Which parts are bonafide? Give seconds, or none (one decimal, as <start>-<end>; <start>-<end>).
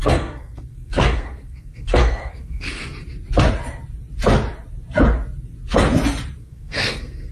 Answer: 2.8-6.4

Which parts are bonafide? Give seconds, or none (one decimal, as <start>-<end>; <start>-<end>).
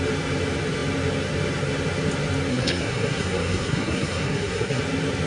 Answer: 0.0-2.5; 4.8-5.3